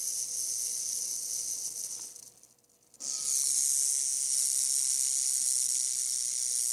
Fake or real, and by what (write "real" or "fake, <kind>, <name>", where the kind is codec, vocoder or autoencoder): real